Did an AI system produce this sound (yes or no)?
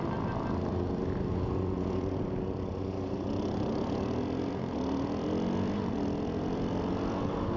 no